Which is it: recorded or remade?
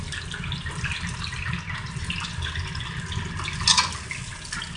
recorded